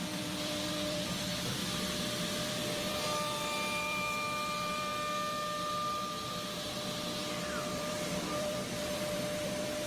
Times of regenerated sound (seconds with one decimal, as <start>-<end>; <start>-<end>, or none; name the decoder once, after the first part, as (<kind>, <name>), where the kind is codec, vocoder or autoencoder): 0.0-1.6 (vocoder, BigVGAN v2); 2.3-4.9; 7.7-9.9